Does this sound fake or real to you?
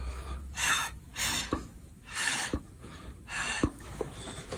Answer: fake